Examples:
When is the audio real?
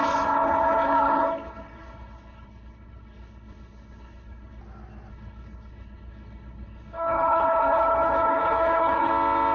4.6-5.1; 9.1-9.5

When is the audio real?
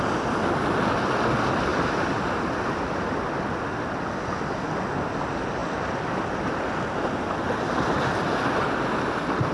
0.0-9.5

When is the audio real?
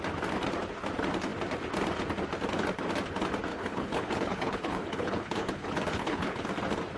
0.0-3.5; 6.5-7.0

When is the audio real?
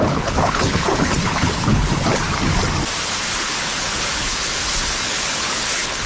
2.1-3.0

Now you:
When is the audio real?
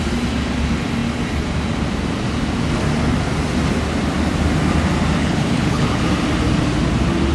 0.0-5.2; 6.0-7.3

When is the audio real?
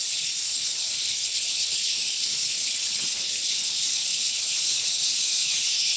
none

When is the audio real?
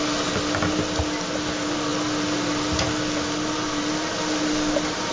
0.0-5.1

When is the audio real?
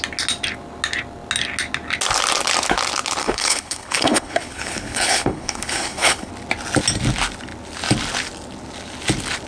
0.0-3.2; 6.3-9.5